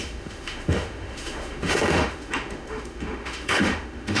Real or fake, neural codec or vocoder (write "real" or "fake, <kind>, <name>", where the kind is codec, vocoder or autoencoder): fake, autoencoder, DAC-VAE